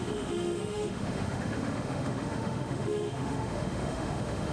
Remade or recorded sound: remade